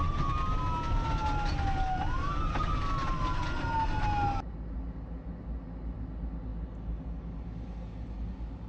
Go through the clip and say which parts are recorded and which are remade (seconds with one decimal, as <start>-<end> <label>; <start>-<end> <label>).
0.0-8.7 recorded